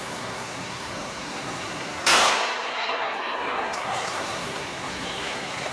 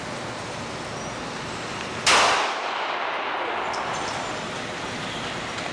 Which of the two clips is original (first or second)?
second